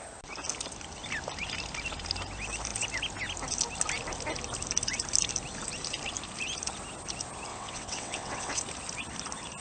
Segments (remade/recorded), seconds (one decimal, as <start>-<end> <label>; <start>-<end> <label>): 0.0-7.5 recorded; 7.5-8.6 remade; 8.6-9.6 recorded